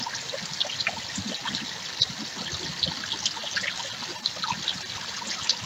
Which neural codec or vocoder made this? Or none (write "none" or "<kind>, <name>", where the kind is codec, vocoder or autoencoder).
none